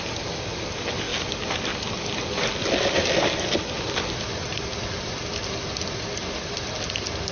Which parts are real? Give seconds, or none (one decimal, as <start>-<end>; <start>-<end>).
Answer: 0.0-7.3